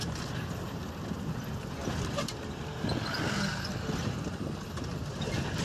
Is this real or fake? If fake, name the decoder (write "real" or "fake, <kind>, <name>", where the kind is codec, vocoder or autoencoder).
real